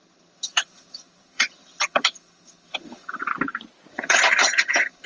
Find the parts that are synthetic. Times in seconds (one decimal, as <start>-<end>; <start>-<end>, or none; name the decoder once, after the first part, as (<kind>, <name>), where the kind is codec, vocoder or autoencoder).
0.0-3.3 (vocoder, HiFi-GAN); 3.9-5.1